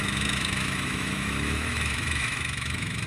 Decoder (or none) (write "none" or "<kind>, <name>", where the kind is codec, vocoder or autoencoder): autoencoder, DAC-VAE